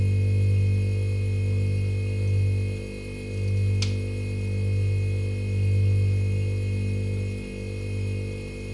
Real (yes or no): yes